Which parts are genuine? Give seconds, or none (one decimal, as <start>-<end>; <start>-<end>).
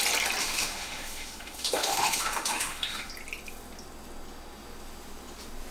0.0-0.4; 3.1-5.7